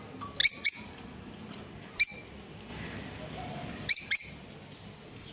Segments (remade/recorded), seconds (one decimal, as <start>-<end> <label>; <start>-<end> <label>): 0.0-0.4 recorded; 0.4-1.4 remade; 1.4-5.3 recorded